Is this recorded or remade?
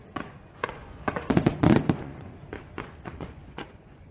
remade